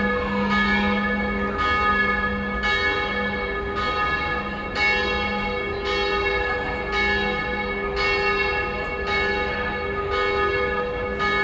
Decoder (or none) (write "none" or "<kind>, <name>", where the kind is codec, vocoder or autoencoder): none